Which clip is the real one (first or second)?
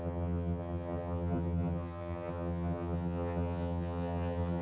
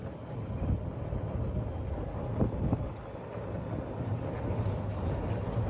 second